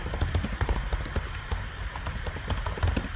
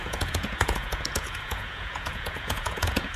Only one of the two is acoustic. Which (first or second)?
first